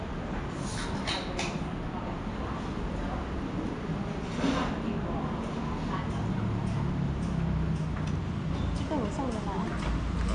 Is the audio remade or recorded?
recorded